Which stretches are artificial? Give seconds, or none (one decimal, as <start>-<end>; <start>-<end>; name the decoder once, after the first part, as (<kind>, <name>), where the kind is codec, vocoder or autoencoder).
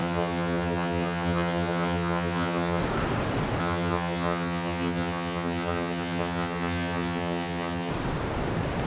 0.0-2.8 (vocoder, HiFi-GAN); 3.6-7.9